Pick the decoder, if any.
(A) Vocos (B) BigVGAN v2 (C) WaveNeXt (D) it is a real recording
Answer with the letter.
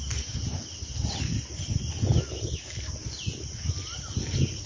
D